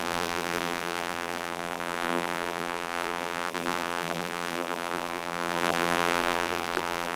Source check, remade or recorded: remade